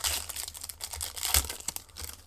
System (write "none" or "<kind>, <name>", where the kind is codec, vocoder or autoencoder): none